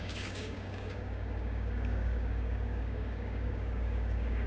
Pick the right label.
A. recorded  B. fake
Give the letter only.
B